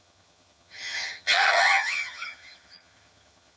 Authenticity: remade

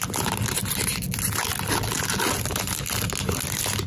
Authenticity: recorded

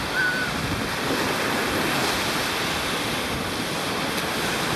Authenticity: recorded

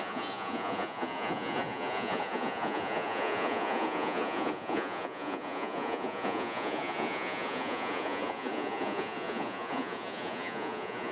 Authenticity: remade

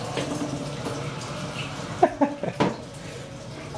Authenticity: remade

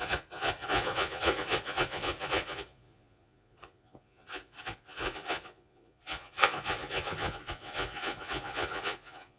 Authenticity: remade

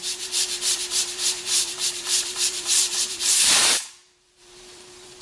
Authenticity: remade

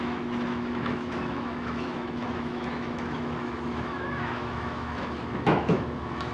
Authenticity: remade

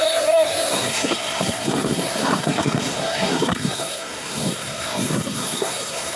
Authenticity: remade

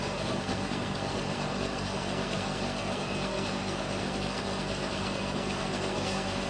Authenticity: remade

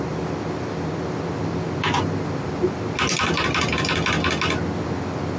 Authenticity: recorded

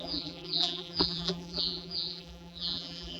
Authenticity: remade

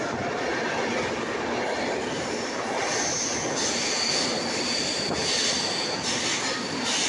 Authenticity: recorded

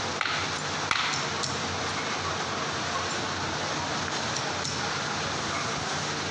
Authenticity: recorded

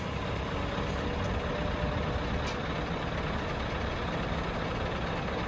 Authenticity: recorded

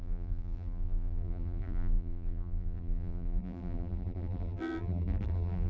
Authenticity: remade